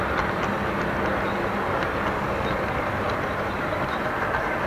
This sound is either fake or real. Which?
real